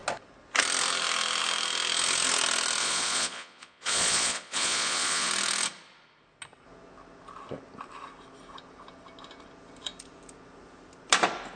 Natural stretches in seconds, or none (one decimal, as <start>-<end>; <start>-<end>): 0.0-2.8; 5.3-11.6